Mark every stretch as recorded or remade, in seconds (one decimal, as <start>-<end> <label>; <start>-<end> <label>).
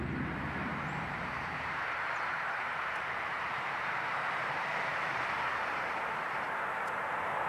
0.0-0.7 recorded; 0.7-5.2 remade; 5.2-7.5 recorded